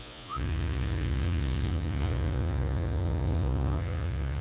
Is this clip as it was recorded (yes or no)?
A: no